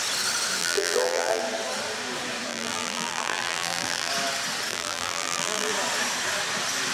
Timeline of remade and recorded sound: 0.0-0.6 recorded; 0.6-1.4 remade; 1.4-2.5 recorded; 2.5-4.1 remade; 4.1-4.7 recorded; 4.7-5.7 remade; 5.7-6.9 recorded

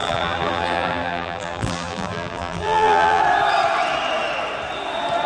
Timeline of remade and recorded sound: 0.0-3.2 remade; 3.2-5.3 recorded

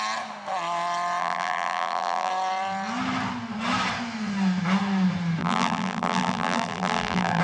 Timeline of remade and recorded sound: 0.0-1.2 recorded; 1.2-2.3 remade; 2.3-5.4 recorded; 5.4-7.4 remade